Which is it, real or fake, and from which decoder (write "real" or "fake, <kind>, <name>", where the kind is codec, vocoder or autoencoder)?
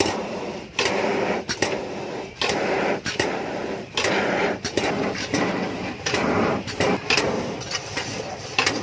fake, vocoder, BigVGAN v2